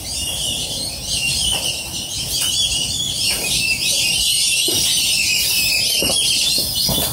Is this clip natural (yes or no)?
no